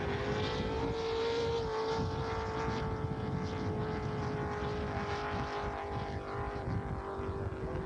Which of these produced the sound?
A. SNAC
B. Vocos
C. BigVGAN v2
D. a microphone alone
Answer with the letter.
D